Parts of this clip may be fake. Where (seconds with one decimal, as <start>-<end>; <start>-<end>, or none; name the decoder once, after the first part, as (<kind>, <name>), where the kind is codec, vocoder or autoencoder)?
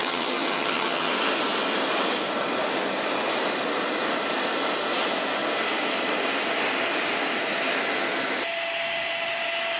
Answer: 0.0-1.1 (vocoder, HiFi-GAN)